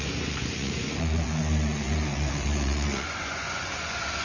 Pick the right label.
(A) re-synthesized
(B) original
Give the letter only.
A